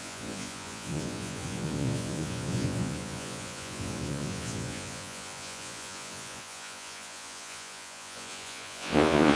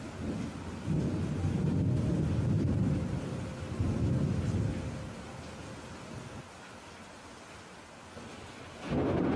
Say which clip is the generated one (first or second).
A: first